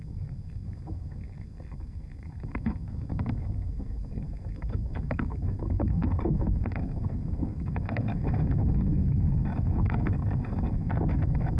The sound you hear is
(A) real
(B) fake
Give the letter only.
B